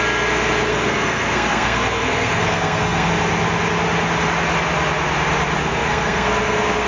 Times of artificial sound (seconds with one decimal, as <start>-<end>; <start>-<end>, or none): 0.7-3.1; 5.6-6.9